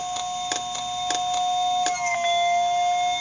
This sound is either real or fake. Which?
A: real